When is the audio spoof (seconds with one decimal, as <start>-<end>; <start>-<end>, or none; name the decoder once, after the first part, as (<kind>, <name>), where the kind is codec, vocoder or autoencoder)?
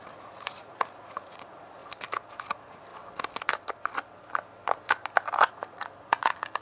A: 0.0-1.8 (vocoder, Vocos); 2.4-2.9; 5.5-6.6